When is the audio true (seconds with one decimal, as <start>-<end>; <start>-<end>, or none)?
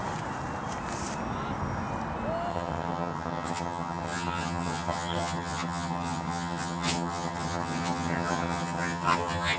0.0-2.5